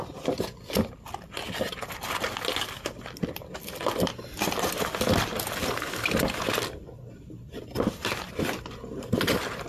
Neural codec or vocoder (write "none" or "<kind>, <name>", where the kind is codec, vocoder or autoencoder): none